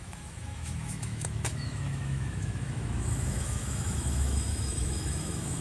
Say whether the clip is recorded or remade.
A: remade